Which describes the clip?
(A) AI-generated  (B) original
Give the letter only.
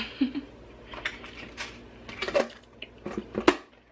B